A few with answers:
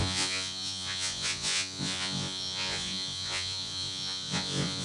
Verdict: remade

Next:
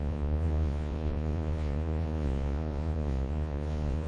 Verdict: remade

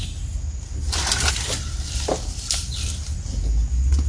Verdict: recorded